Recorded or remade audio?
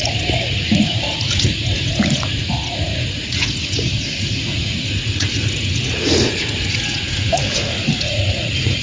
remade